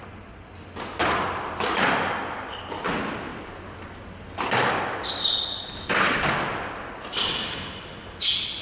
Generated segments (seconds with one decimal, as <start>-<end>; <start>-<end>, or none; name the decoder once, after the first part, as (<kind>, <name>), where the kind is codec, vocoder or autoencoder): none